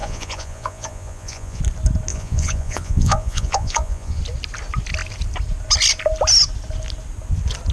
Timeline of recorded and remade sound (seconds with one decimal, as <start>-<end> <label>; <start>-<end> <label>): 0.0-1.6 remade; 1.6-2.1 recorded; 2.1-4.2 remade; 4.2-7.7 recorded